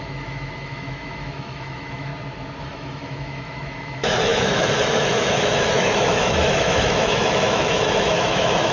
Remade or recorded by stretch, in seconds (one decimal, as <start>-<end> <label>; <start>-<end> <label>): 0.0-2.1 remade; 2.1-2.6 recorded; 2.6-8.7 remade